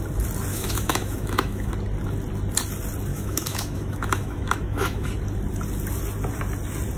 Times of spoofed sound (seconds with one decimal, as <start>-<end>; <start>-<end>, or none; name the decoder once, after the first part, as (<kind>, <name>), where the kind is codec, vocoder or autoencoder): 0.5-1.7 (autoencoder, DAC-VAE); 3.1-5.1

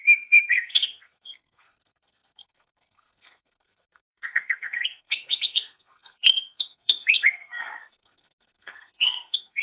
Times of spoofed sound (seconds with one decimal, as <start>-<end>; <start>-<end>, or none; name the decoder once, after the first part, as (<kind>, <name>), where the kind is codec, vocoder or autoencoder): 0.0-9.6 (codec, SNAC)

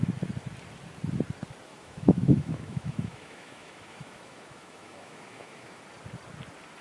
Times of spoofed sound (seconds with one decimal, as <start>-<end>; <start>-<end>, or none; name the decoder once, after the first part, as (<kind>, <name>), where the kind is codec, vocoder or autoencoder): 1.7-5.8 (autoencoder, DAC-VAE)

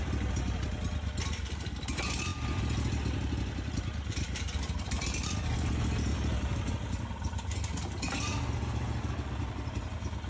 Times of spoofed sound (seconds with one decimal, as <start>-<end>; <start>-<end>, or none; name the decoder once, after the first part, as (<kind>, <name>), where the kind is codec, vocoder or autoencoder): 6.1-6.7 (vocoder, BigVGAN v2)

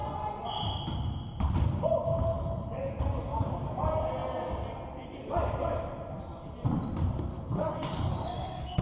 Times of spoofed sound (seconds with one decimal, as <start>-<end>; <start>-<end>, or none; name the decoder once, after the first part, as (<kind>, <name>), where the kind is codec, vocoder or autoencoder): 2.3-3.0 (codec, DAC); 7.3-8.8

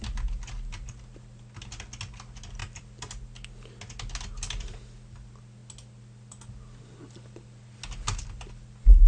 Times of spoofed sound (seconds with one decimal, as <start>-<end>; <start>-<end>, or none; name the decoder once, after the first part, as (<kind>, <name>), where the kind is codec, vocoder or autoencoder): none

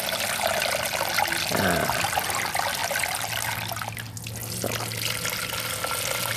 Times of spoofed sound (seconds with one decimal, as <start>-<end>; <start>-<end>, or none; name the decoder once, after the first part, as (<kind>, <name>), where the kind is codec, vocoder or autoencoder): none